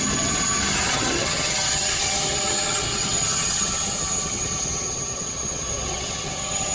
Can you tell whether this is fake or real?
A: fake